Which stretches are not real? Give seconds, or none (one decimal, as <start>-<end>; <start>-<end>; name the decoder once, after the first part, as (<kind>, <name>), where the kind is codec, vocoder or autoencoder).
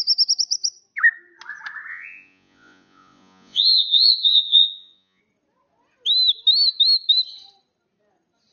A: 1.9-5.2 (vocoder, Vocos)